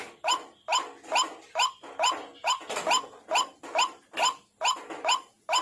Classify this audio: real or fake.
real